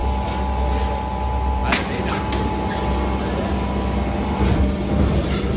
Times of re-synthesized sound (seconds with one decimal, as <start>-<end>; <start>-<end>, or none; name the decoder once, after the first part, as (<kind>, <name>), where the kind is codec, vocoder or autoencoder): none